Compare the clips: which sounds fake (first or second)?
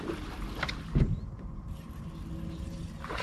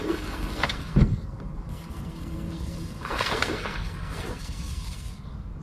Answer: second